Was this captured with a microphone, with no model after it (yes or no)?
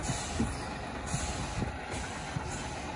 yes